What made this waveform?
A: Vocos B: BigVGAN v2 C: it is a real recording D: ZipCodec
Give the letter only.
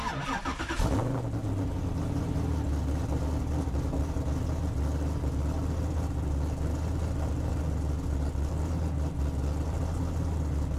C